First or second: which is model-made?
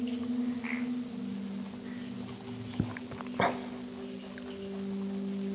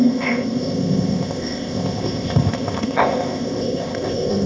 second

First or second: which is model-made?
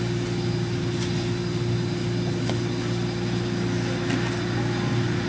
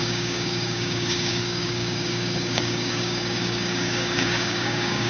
second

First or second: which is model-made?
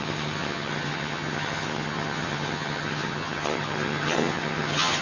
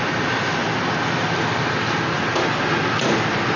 first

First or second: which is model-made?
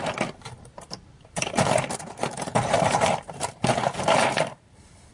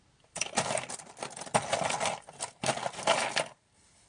first